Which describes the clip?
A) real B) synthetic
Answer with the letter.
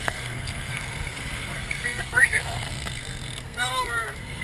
B